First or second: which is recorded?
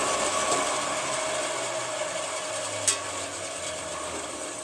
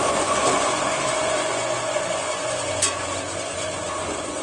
first